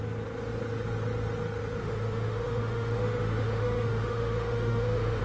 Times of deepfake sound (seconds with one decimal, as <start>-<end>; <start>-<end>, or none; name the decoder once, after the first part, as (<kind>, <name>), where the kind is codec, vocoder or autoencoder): 1.8-5.2 (autoencoder, DAC-VAE)